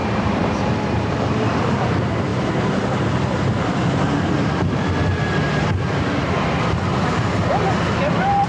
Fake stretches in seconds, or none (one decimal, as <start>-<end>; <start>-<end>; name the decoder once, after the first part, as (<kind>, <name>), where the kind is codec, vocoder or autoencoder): 0.0-0.7 (vocoder, BigVGAN v2)